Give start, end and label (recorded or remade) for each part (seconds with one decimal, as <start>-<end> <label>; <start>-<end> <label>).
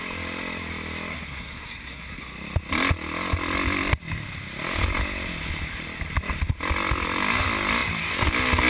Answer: 0.0-1.1 recorded; 1.1-2.2 remade; 2.2-8.7 recorded